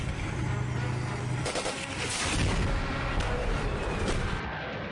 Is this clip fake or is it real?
real